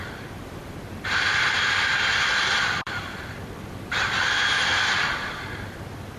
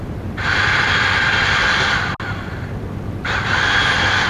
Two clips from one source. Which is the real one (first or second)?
second